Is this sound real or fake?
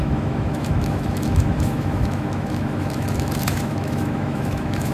fake